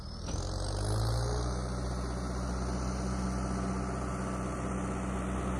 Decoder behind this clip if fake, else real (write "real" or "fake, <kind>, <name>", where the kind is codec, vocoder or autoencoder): real